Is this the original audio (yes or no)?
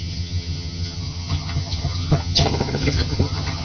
no